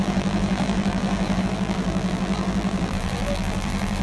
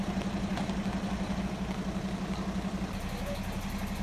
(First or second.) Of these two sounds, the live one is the second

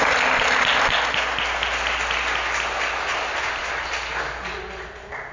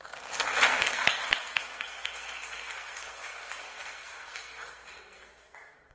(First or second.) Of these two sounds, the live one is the first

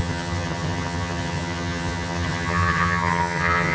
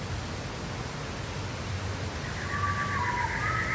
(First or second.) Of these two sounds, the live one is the second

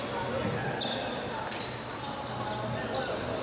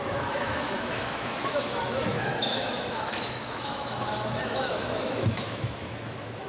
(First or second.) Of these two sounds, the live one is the first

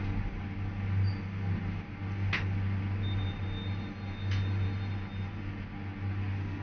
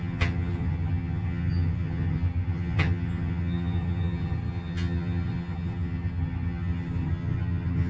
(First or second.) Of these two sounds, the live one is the first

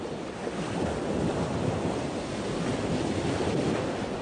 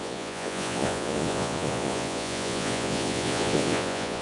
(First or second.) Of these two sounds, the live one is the first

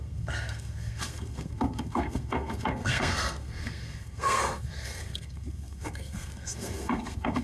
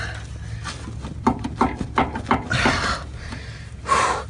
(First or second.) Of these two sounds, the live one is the second